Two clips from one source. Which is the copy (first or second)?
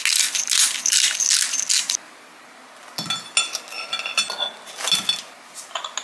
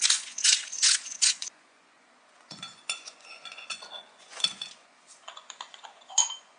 second